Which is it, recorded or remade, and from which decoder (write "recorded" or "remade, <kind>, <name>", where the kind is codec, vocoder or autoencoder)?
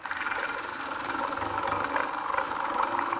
remade, vocoder, BigVGAN v2